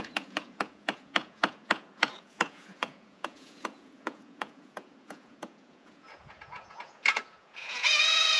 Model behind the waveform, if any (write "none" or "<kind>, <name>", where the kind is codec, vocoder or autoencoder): vocoder, Vocos